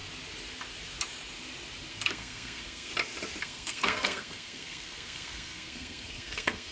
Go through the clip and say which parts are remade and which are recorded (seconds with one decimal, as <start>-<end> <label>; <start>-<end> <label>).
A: 0.0-1.9 recorded; 1.9-2.9 remade; 2.9-3.4 recorded; 3.4-6.7 remade